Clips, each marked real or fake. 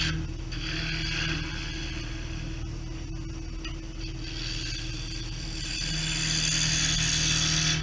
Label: real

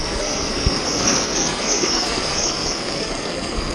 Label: fake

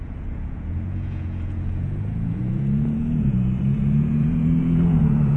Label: fake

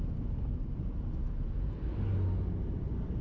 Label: real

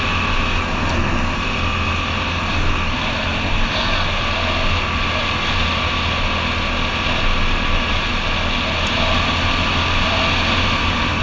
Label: real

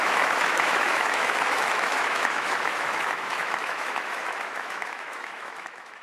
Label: fake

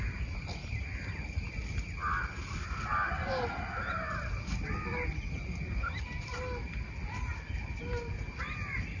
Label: real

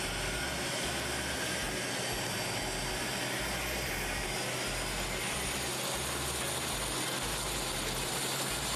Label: real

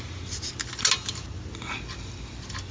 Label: real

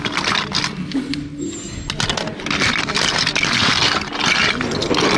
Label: real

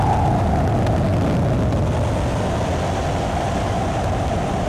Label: real